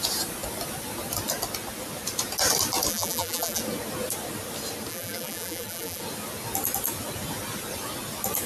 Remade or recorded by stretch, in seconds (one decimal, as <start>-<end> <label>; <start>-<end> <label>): 0.0-2.9 recorded; 2.9-3.6 remade; 3.6-4.9 recorded; 4.9-6.0 remade; 6.0-8.5 recorded